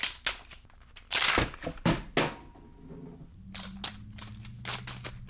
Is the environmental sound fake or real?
real